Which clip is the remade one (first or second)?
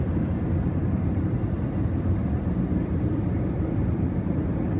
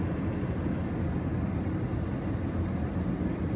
first